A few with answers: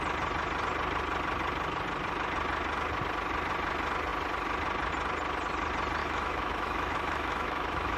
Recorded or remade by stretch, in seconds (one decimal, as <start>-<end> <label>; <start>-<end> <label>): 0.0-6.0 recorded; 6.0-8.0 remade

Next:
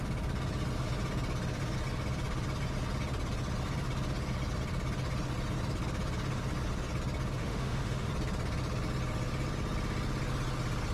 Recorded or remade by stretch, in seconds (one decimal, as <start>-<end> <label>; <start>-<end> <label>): 0.0-7.4 recorded; 7.4-8.1 remade; 8.1-10.9 recorded

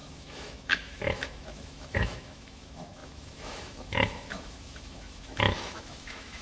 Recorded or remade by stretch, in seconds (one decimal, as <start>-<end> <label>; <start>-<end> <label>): 0.0-6.4 remade